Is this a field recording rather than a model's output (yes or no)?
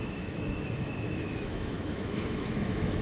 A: no